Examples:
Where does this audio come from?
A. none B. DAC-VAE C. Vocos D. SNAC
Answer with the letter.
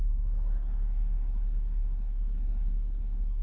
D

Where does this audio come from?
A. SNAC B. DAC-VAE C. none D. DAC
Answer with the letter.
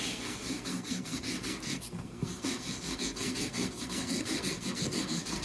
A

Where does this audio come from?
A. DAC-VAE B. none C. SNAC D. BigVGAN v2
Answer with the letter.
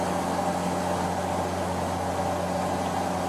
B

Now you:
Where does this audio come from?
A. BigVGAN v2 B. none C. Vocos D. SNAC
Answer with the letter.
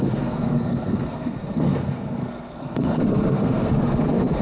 D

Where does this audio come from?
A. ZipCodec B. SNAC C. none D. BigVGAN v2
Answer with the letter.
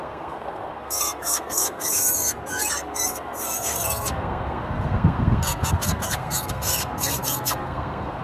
B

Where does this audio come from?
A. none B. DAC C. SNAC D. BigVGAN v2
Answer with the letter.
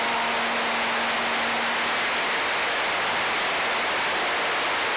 A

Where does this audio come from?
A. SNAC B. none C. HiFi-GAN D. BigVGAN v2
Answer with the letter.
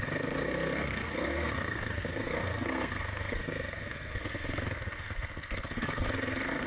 A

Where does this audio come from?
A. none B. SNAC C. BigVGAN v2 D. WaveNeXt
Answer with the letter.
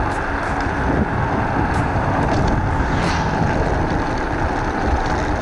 A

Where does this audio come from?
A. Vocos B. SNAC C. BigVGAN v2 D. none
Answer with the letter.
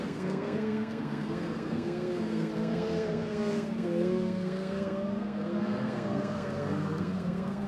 B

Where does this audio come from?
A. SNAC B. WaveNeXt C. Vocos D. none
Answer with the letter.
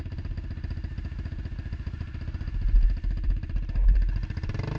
D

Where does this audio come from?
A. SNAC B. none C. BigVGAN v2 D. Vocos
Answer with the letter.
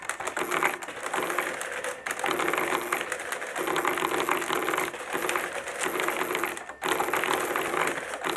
B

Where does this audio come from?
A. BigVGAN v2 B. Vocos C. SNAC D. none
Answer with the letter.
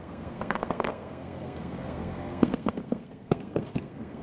C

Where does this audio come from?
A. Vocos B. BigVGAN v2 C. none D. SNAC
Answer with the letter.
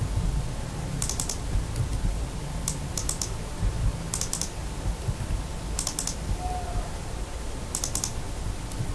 C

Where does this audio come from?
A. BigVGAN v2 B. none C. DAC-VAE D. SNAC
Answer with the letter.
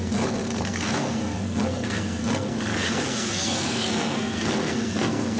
D